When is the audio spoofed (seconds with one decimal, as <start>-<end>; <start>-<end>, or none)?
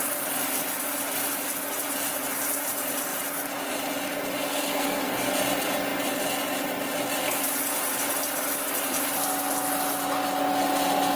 4.5-5.3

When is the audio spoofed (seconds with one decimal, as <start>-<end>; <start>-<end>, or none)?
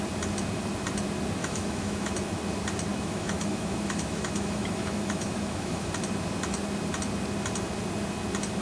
1.4-2.1; 2.9-5.9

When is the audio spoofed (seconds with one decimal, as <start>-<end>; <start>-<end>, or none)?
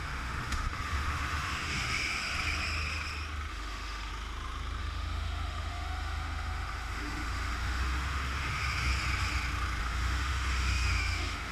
0.0-2.2; 3.5-4.1; 4.8-8.9; 9.8-11.5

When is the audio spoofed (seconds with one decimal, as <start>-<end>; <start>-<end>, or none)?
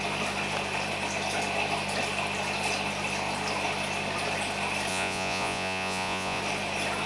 4.9-6.4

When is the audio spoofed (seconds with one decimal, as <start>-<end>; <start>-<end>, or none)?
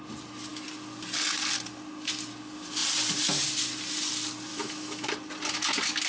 4.5-5.1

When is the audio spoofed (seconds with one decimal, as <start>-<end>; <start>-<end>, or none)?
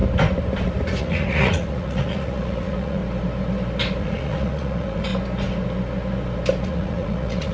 1.0-3.0; 4.0-5.1; 6.6-7.5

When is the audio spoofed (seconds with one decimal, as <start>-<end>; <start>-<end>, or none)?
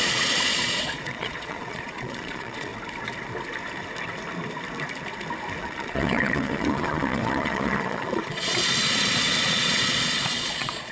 0.0-2.7; 5.6-10.9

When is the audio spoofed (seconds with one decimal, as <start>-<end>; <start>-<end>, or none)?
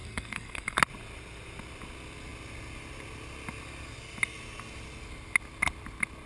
0.0-0.8